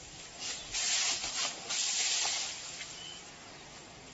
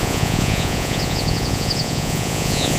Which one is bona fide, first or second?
first